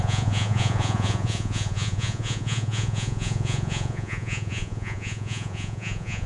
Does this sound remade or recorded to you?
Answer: remade